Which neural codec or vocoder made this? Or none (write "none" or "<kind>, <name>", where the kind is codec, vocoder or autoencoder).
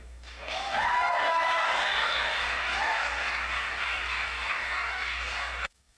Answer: codec, DAC